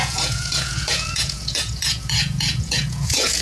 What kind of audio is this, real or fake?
fake